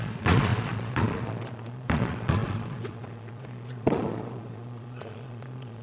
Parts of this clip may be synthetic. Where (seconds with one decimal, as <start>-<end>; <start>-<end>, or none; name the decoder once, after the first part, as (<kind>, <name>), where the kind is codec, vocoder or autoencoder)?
0.0-5.8 (vocoder, Vocos)